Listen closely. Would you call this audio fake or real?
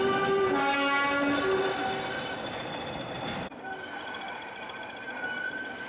real